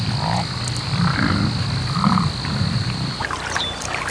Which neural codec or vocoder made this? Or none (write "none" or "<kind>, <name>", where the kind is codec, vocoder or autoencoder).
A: none